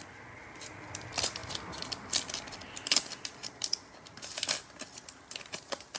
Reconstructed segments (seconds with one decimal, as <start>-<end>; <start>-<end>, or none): none